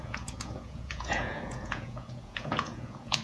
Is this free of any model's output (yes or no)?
no